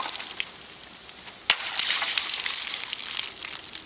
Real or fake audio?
real